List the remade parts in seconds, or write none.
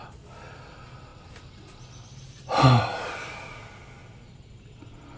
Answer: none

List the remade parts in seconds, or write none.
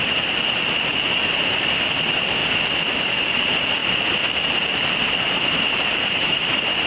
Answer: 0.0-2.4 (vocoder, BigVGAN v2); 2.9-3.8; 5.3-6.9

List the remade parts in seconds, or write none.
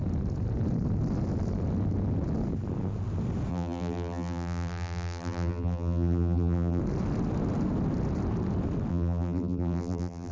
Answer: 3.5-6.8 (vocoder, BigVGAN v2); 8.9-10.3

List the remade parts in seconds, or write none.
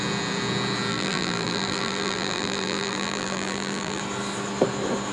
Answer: 0.9-4.0 (vocoder, BigVGAN v2)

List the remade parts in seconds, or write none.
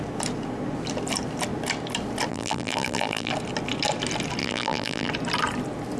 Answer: 2.3-3.3 (vocoder, BigVGAN v2); 4.4-5.1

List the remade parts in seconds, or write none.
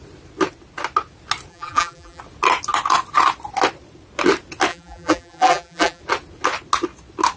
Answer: 1.5-2.2 (vocoder, BigVGAN v2); 4.7-6.0